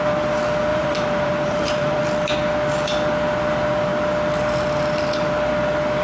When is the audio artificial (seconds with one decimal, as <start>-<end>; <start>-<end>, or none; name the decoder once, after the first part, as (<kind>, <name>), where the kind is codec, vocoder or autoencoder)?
0.7-2.0 (vocoder, BigVGAN v2)